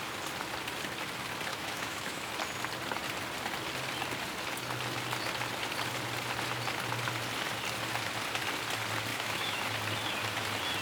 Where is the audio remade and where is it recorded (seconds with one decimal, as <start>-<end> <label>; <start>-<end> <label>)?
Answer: 0.0-1.5 recorded; 1.5-2.3 remade; 2.3-9.1 recorded; 9.1-9.6 remade; 9.6-10.8 recorded